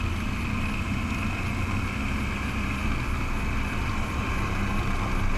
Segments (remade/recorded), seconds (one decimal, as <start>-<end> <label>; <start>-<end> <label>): 0.0-5.4 recorded